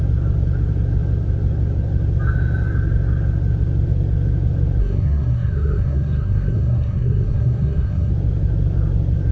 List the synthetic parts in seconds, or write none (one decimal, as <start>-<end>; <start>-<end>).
4.8-8.1